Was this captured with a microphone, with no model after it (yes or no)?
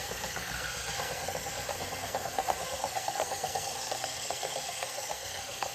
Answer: no